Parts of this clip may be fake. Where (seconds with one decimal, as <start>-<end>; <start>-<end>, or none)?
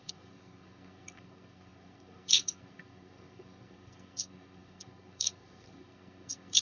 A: 0.0-6.6